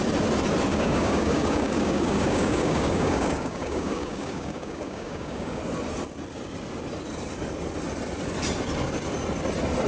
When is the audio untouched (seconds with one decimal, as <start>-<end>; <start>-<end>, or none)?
0.0-0.7; 5.6-9.9